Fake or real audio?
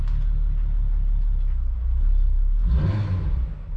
real